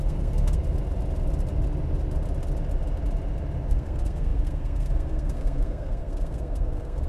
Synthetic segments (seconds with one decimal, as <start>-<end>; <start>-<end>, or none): 0.0-0.6; 3.7-7.1